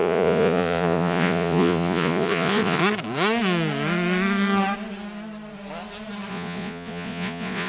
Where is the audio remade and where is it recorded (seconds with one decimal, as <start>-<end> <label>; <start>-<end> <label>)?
0.0-2.8 remade; 2.8-6.3 recorded; 6.3-7.7 remade